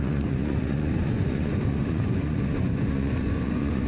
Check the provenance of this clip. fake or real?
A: fake